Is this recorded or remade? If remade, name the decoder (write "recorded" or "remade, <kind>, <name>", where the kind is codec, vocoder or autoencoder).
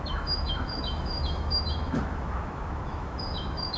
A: remade, autoencoder, DAC-VAE